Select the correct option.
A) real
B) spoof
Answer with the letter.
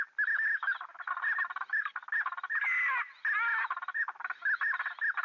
A